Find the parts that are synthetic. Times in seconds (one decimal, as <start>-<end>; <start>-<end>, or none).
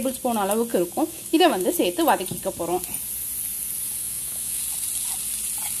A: 0.7-1.7; 4.0-4.6